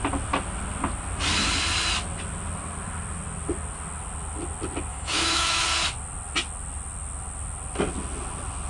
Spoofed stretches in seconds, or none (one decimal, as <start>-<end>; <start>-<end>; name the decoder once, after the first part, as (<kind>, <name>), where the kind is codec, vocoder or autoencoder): 4.9-5.6 (autoencoder, DAC-VAE)